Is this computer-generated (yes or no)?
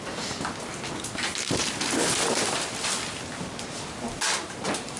no